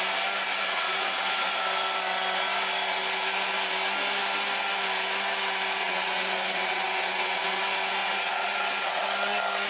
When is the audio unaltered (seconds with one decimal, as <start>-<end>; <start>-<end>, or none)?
0.0-0.5; 1.6-5.8; 7.6-8.0; 9.0-9.7

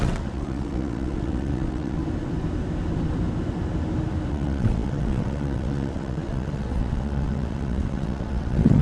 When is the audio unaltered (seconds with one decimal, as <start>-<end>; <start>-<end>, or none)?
2.0-4.3

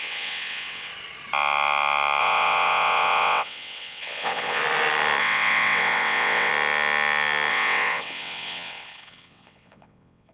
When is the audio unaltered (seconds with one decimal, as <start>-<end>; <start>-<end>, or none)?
0.9-2.2; 4.6-5.2; 6.5-7.5

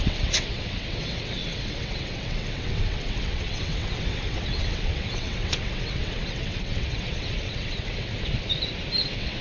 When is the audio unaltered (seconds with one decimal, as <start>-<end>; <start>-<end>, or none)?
8.1-9.0

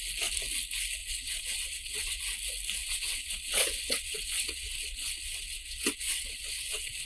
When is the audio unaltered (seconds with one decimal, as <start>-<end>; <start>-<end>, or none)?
0.0-1.0; 2.2-2.8

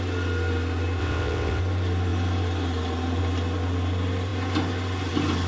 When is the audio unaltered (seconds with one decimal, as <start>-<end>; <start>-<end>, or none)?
0.0-1.0; 1.6-5.5

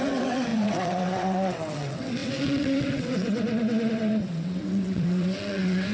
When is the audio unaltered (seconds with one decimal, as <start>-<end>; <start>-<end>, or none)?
none

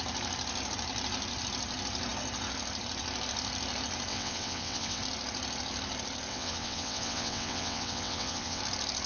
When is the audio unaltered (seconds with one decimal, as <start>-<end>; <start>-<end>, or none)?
0.0-4.1; 5.0-6.3; 8.6-9.1